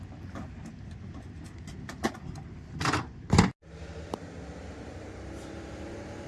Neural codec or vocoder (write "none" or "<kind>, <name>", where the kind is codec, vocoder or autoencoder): none